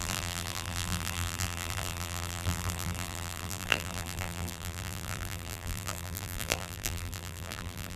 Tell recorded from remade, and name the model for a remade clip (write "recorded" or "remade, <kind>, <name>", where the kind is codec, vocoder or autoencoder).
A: remade, vocoder, BigVGAN v2